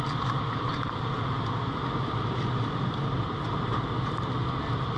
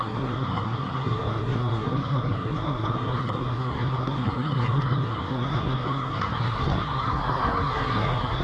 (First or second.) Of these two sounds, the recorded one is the first